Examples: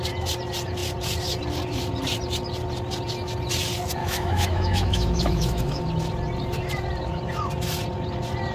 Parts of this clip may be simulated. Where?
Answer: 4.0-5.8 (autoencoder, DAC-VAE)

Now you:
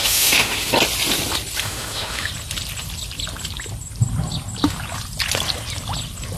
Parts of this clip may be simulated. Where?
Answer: 0.0-0.7 (autoencoder, DAC-VAE); 1.6-2.3